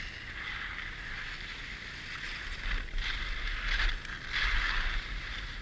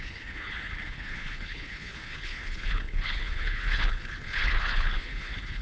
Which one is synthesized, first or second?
second